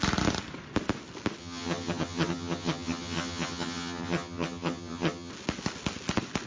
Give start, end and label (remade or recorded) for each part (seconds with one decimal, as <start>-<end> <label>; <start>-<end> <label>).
0.0-1.4 recorded; 1.4-5.3 remade; 5.3-6.5 recorded

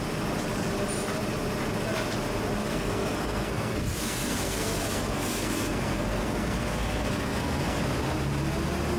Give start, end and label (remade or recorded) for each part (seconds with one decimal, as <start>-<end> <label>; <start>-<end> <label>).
0.0-2.6 recorded; 2.6-7.8 remade; 7.8-9.0 recorded

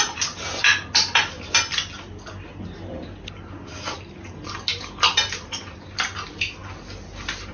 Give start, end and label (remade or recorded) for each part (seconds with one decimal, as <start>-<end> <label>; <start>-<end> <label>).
0.0-7.5 recorded

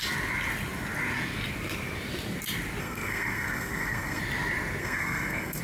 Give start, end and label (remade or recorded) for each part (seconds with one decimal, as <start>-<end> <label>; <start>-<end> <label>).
0.0-2.8 recorded; 2.8-4.2 remade; 4.2-4.8 recorded; 4.8-5.6 remade

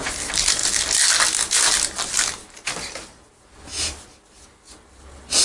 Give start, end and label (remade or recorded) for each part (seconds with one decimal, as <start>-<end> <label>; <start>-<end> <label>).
0.0-5.4 recorded

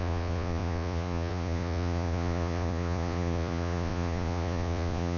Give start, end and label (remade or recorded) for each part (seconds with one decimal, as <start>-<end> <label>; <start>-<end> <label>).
0.0-5.2 remade